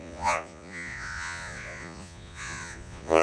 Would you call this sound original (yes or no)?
no